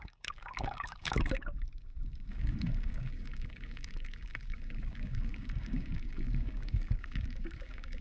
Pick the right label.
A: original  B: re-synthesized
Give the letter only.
B